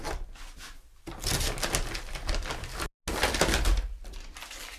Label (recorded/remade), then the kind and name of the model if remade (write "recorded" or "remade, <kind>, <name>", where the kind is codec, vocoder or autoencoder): recorded